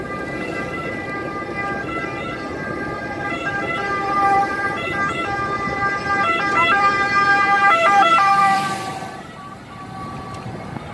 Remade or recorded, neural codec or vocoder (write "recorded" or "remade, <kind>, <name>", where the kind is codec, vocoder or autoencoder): remade, vocoder, BigVGAN v2